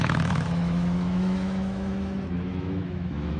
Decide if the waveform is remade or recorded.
remade